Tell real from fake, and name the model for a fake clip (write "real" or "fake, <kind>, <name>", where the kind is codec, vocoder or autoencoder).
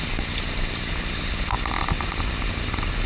real